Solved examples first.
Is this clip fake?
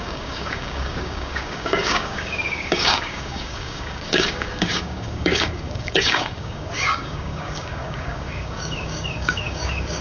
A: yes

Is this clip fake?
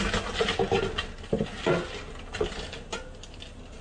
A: no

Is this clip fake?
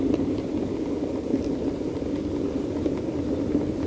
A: no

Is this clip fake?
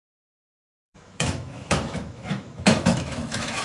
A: yes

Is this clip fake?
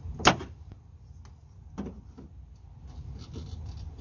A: no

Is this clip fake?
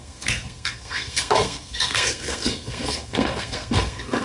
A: yes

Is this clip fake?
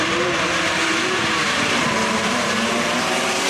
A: yes